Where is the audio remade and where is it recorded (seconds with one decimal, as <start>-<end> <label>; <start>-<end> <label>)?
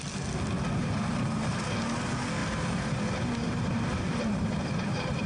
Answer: 0.0-0.8 recorded; 0.8-1.5 remade; 1.5-2.4 recorded; 2.4-5.3 remade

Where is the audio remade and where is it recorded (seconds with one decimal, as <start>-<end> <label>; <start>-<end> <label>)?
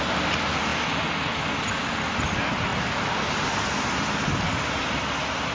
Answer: 0.0-0.7 remade; 0.7-1.9 recorded; 1.9-2.7 remade; 2.7-4.9 recorded; 4.9-5.5 remade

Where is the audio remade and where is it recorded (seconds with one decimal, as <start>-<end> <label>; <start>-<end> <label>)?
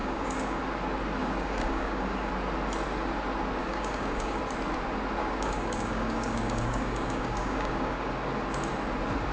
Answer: 0.0-0.6 remade; 0.6-1.2 recorded; 1.2-2.3 remade; 2.3-3.6 recorded; 3.6-4.4 remade; 4.4-5.2 recorded; 5.2-8.1 remade; 8.1-9.3 recorded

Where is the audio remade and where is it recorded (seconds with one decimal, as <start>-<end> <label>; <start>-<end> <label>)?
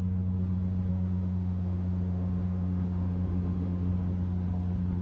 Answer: 0.0-0.9 recorded; 0.9-3.9 remade; 3.9-5.0 recorded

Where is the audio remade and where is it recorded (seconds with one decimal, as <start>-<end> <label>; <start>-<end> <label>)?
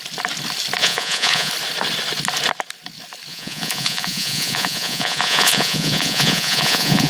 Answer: 0.0-0.8 recorded; 0.8-1.5 remade; 1.5-3.3 recorded; 3.3-7.1 remade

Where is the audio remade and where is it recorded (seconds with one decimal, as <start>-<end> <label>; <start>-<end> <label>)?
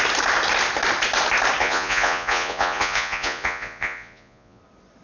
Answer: 0.0-1.6 recorded; 1.6-4.6 remade; 4.6-5.0 recorded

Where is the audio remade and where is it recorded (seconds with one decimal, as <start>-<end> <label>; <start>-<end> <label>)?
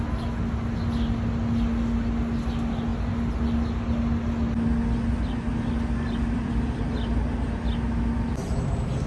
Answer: 0.0-9.1 recorded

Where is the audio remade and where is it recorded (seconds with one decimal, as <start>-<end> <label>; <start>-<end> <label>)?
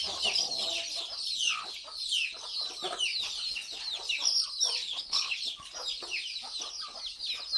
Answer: 0.0-4.8 recorded; 4.8-5.4 remade; 5.4-7.6 recorded